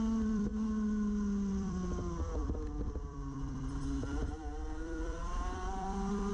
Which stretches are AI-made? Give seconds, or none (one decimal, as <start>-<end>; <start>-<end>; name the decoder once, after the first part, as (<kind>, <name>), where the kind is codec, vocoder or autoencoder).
0.0-0.5 (vocoder, BigVGAN v2); 1.5-2.4; 3.1-6.3